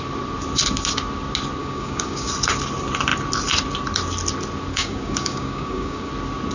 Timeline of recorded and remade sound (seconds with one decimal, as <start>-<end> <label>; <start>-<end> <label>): 0.0-1.6 recorded; 1.6-2.3 remade; 2.3-4.7 recorded; 4.7-6.1 remade; 6.1-6.5 recorded